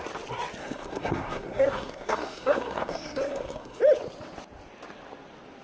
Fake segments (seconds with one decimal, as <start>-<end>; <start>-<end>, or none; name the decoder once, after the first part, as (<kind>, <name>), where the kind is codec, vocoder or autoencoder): 0.6-3.8 (codec, SNAC)